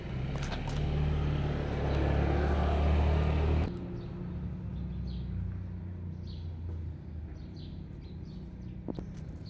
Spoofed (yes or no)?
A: no